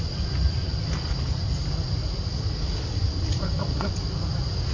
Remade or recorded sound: recorded